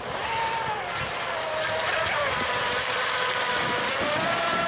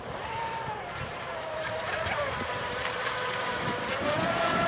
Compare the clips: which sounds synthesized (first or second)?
second